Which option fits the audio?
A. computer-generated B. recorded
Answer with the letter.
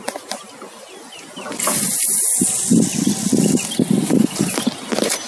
B